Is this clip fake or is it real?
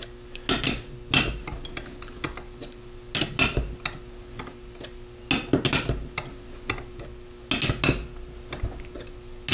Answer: real